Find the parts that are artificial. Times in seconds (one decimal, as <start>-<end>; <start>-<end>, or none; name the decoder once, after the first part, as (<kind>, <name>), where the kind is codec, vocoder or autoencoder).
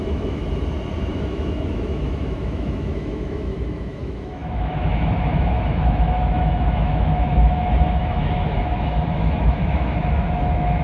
0.0-0.4 (autoencoder, DAC-VAE); 1.1-10.8